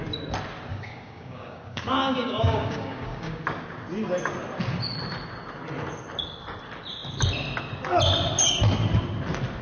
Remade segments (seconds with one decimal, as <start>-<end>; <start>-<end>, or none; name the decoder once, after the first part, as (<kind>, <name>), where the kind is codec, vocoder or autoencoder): 0.7-3.4 (codec, DAC)